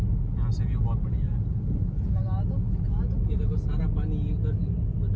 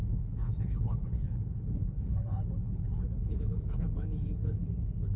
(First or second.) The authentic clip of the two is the first